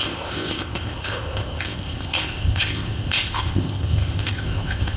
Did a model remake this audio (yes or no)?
yes